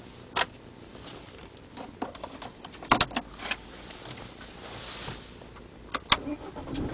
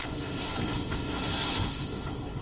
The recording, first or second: first